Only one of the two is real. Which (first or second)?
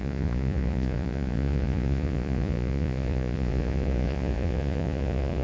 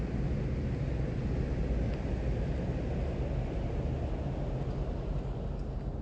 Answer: second